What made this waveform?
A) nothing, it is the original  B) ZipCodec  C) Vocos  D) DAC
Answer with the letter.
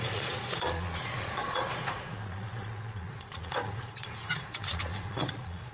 C